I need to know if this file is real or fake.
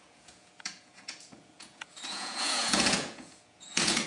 fake